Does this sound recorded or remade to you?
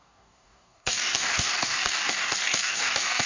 remade